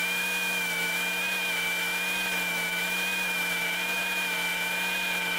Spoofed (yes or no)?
yes